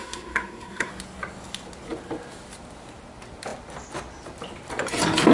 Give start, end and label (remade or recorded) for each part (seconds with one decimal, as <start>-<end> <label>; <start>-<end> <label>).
0.0-0.9 remade; 0.9-5.3 recorded